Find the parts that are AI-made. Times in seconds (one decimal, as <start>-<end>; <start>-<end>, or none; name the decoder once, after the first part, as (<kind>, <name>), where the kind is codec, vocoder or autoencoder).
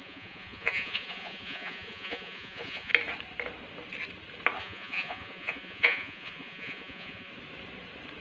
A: 0.0-2.9 (vocoder, Vocos); 4.6-7.3